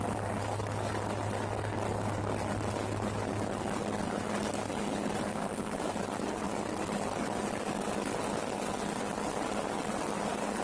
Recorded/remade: recorded